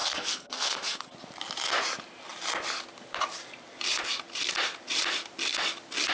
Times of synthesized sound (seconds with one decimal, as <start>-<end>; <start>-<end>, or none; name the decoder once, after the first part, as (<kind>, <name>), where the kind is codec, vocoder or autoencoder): 0.0-1.1 (codec, SNAC)